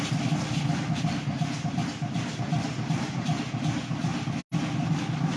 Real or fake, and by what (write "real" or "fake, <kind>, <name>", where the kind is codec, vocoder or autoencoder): real